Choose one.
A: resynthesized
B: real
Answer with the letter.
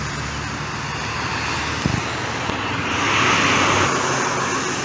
B